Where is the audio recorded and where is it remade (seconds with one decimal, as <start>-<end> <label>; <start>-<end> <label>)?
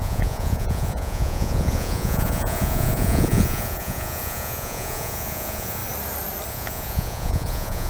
0.0-5.8 remade; 5.8-6.5 recorded; 6.5-7.9 remade